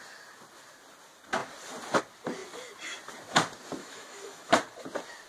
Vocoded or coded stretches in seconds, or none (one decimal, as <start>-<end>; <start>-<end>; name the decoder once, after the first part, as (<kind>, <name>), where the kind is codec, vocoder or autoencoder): 3.8-4.5 (autoencoder, DAC-VAE)